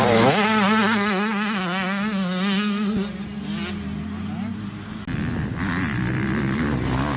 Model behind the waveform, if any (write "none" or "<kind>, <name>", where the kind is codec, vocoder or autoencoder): none